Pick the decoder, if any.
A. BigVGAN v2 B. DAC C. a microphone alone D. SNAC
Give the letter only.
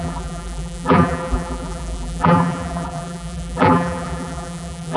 A